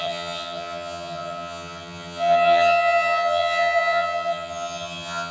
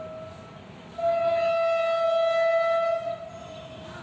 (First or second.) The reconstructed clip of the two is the first